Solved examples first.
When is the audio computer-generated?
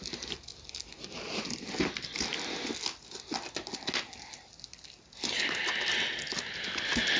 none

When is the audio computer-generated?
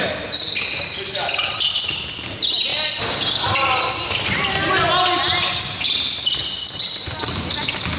none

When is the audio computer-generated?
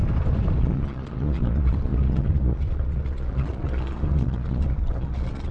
0.6-5.5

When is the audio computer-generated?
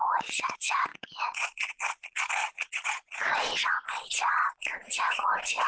0.0-5.7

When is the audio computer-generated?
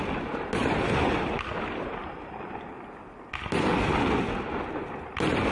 0.6-2.1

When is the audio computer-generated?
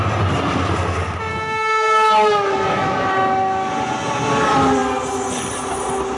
1.3-3.7